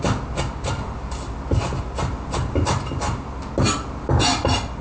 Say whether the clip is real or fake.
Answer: real